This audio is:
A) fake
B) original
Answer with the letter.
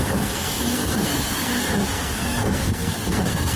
A